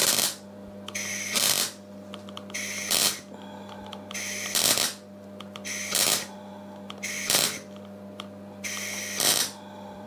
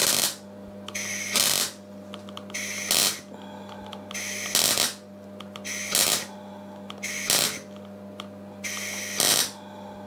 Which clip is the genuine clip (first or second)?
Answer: second